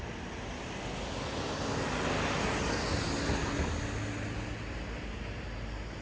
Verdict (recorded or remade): recorded